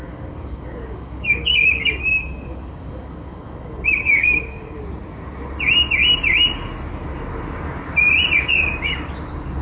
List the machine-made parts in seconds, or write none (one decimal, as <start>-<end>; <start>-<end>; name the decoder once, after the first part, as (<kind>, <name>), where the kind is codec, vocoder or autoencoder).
0.0-4.8 (codec, DAC)